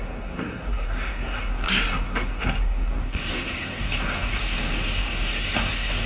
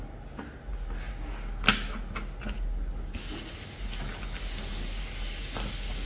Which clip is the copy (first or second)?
first